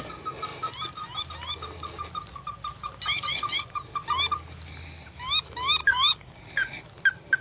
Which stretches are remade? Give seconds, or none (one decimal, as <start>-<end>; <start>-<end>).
5.8-6.4